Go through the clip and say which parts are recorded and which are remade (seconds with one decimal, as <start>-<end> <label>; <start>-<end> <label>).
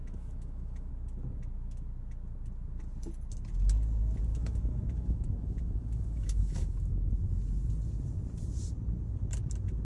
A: 0.0-0.9 remade; 0.9-4.3 recorded; 4.3-7.1 remade; 7.1-9.8 recorded